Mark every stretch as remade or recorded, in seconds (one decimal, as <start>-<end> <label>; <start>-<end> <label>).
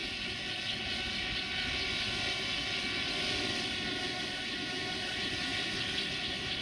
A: 0.0-4.0 recorded; 4.0-5.5 remade; 5.5-6.1 recorded; 6.1-6.6 remade